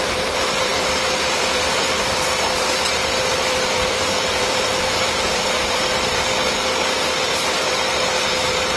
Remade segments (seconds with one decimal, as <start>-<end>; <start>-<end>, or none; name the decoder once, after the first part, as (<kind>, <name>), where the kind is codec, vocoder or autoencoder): 0.0-6.3 (vocoder, BigVGAN v2); 7.2-8.8